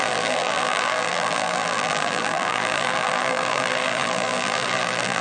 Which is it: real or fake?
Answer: fake